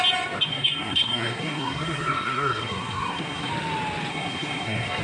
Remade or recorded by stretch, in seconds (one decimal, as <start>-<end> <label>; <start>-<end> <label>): 0.0-0.5 recorded; 0.5-3.5 remade; 3.5-4.1 recorded; 4.1-5.0 remade